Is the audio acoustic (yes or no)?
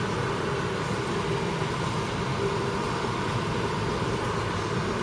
yes